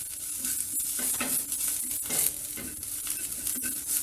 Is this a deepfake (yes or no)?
no